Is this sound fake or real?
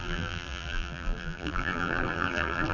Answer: fake